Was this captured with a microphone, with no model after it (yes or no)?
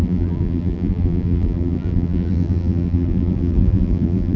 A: no